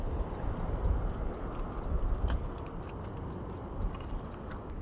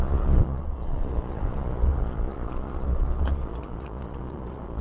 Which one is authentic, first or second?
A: first